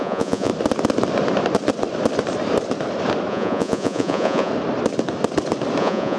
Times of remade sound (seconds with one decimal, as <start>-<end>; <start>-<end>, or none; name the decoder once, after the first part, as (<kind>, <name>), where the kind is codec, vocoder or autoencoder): 0.0-0.5 (vocoder, Vocos); 3.3-4.5; 5.8-6.2